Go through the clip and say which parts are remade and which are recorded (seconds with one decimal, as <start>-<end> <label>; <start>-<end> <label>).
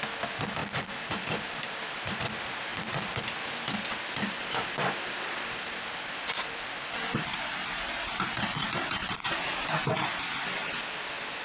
0.0-0.6 recorded; 0.6-2.1 remade; 2.1-2.7 recorded; 2.7-7.5 remade; 7.5-11.4 recorded